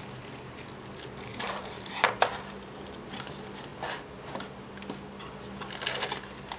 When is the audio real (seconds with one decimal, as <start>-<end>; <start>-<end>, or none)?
0.0-1.3; 1.9-6.6